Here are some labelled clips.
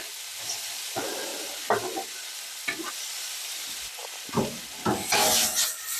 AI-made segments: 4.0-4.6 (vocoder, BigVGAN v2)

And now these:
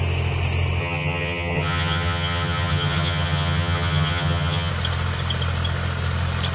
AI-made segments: 0.8-4.7 (vocoder, HiFi-GAN)

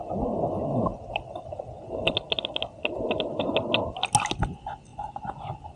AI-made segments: 0.9-1.5 (vocoder, BigVGAN v2)

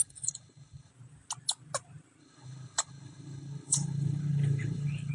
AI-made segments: 0.0-0.9 (codec, HILCodec); 2.2-5.1